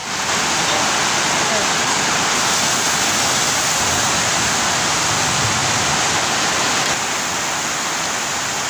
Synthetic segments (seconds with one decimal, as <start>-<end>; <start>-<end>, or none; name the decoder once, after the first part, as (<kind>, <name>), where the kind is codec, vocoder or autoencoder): none